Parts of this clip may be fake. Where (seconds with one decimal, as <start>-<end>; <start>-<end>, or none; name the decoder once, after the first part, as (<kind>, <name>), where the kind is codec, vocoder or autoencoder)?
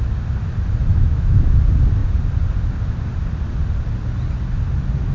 0.9-1.6 (autoencoder, DAC-VAE)